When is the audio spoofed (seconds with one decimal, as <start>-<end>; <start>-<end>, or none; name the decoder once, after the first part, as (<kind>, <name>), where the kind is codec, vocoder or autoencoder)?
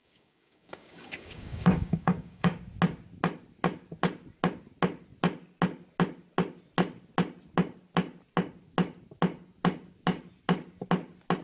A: 0.0-2.6 (codec, DAC)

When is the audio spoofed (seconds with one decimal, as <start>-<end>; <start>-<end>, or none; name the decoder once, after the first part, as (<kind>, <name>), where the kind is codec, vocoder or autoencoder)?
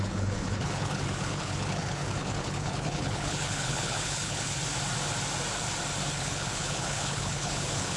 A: 0.0-4.6 (codec, HILCodec); 6.1-8.0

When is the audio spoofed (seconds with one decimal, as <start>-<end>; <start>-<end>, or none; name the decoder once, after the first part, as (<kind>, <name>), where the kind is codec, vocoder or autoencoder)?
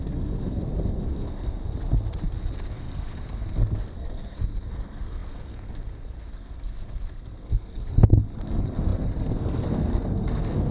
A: 0.0-1.6 (codec, SNAC); 2.7-10.7